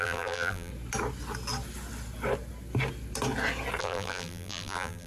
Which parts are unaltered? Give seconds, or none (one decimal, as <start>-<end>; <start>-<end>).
0.7-3.8